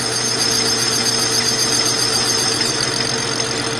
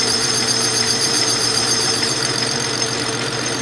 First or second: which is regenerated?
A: second